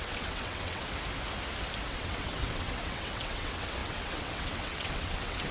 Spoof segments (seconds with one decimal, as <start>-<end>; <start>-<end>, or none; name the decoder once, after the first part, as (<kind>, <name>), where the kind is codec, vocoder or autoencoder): 0.0-0.8 (vocoder, WaveNeXt); 1.9-5.5